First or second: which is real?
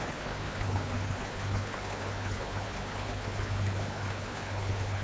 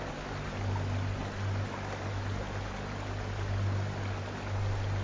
second